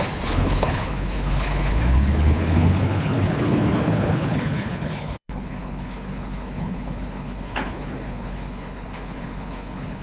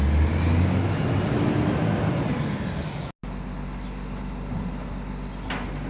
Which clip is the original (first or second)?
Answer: second